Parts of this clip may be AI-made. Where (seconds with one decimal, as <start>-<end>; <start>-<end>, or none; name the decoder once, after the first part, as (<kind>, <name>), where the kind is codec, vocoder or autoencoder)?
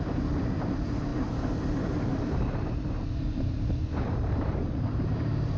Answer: 0.0-5.6 (vocoder, BigVGAN v2)